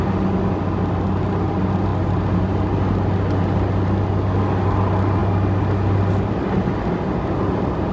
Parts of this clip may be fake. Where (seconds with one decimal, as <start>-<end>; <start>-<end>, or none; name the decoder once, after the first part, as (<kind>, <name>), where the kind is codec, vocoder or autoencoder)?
none